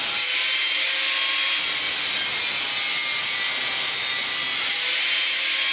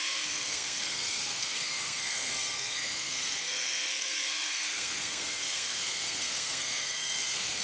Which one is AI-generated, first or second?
second